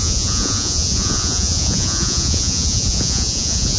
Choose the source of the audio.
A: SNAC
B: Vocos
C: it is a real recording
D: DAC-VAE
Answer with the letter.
B